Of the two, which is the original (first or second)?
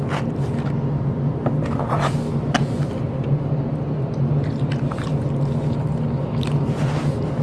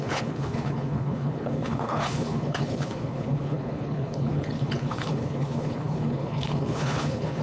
first